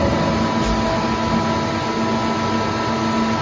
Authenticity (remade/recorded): recorded